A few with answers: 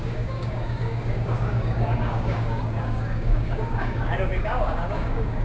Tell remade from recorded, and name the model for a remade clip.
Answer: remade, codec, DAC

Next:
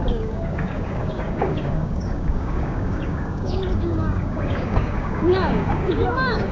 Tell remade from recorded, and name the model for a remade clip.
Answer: remade, codec, DAC